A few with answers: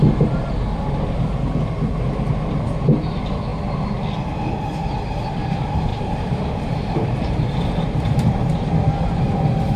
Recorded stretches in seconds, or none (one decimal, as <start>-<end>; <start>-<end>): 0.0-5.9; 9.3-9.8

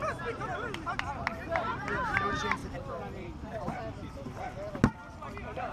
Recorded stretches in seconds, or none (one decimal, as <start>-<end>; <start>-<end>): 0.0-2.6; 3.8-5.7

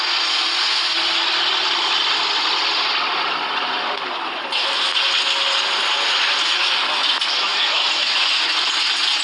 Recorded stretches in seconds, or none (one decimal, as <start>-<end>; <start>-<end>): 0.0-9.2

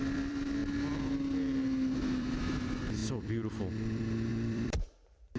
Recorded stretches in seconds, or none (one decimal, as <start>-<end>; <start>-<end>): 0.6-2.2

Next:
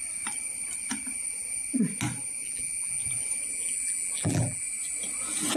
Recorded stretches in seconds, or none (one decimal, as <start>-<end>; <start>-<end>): 0.0-2.4; 3.0-3.5; 4.6-5.6

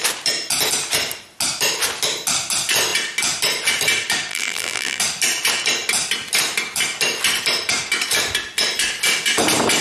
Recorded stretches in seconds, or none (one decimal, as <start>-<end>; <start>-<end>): 0.0-4.3; 5.0-9.8

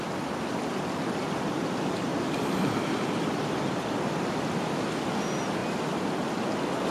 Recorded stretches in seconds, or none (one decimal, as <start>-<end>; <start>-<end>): 0.0-2.1; 4.5-6.9

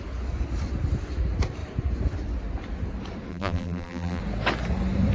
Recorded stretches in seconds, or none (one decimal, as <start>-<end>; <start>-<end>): 0.0-3.3; 4.2-5.1